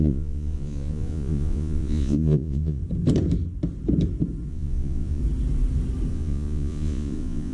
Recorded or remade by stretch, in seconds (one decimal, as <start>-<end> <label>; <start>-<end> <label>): 0.0-2.8 remade; 2.8-4.5 recorded; 4.5-5.2 remade; 5.2-6.1 recorded; 6.1-7.5 remade